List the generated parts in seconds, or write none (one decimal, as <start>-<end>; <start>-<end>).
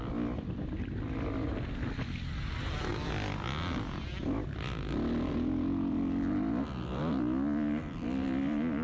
none